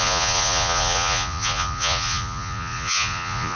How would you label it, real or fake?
fake